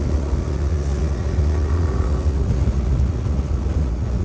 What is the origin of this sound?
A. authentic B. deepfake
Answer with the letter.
B